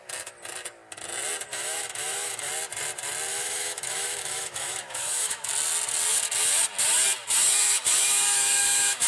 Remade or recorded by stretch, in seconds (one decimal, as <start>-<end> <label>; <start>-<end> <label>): 0.0-1.5 recorded; 1.5-2.5 remade; 2.5-3.3 recorded; 3.3-5.4 remade; 5.4-7.5 recorded; 7.5-9.1 remade